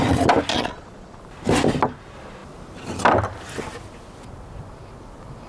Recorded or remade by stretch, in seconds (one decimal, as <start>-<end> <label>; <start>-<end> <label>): 0.0-0.5 recorded; 0.5-1.2 remade; 1.2-5.5 recorded